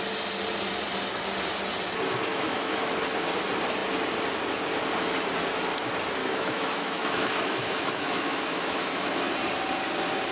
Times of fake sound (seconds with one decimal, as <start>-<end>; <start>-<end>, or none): 2.3-2.9; 6.2-9.2